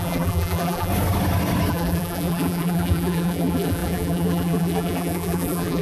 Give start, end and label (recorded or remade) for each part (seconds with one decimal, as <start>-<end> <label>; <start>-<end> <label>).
0.0-0.9 remade; 0.9-1.7 recorded; 1.7-5.8 remade